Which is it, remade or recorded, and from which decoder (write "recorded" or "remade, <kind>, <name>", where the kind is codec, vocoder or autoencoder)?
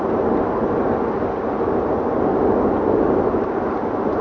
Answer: recorded